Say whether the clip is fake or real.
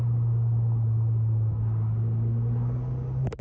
real